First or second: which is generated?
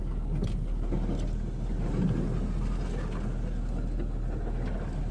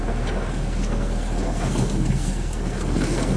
second